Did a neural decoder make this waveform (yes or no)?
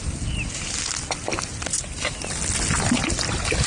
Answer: no